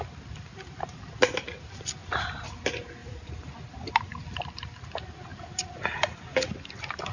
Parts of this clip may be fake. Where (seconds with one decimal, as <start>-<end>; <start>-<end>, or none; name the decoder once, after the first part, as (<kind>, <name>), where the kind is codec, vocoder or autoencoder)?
3.0-3.5 (vocoder, BigVGAN v2)